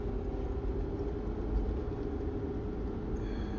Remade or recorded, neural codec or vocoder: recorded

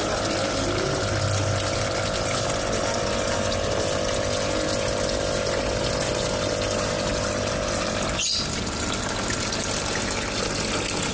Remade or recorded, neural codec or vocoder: recorded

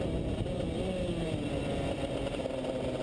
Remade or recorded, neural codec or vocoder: recorded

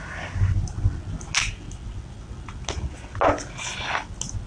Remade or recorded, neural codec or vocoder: recorded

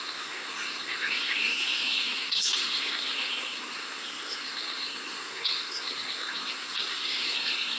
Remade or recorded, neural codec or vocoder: remade, codec, SNAC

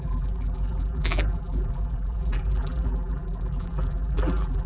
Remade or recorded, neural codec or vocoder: remade, vocoder, BigVGAN v2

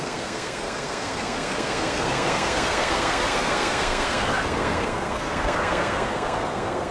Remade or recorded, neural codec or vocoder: remade, codec, SNAC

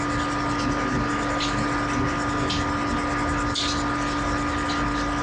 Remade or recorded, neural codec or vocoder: recorded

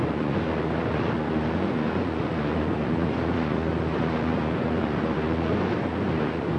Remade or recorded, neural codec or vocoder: remade, vocoder, Vocos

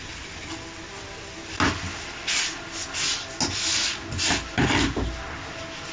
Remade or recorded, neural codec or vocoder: recorded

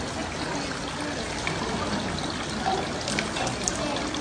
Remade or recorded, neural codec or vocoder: recorded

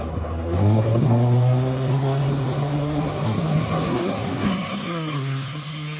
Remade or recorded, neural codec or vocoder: remade, codec, SNAC